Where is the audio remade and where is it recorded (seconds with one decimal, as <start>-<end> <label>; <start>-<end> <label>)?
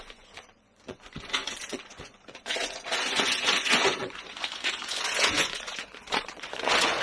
0.0-7.0 remade